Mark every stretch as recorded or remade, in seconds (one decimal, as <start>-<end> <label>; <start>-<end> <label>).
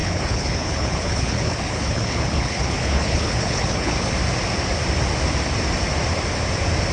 0.0-4.1 remade; 4.1-6.9 recorded